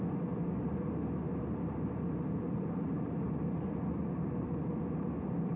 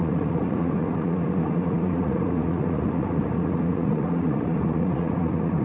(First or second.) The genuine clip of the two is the first